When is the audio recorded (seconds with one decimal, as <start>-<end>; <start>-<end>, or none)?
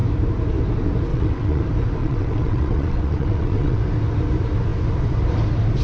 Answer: 0.0-1.1; 1.6-2.0; 3.8-5.8